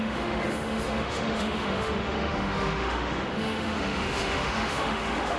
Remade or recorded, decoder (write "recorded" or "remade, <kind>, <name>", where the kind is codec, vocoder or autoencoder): remade, autoencoder, DAC-VAE